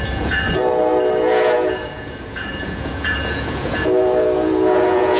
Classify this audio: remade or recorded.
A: remade